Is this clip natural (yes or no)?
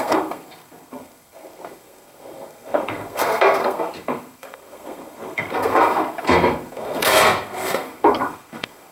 no